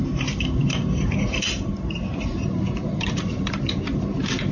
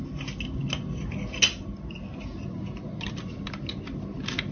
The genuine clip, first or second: second